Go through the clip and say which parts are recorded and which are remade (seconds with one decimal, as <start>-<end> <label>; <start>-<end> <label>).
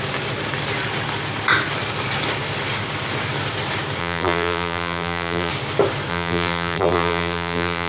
0.0-4.0 recorded; 4.0-5.5 remade; 5.5-6.1 recorded; 6.1-7.9 remade